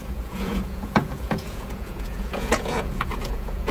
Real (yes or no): no